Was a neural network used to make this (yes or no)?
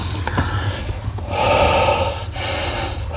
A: no